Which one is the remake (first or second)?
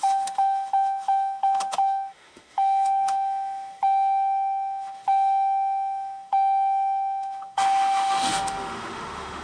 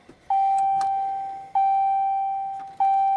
first